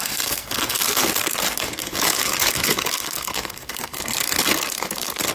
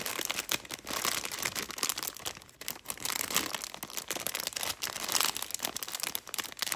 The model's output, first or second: first